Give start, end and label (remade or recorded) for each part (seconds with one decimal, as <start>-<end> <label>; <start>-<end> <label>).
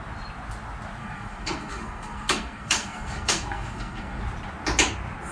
0.0-1.0 recorded; 1.0-4.2 remade; 4.2-5.3 recorded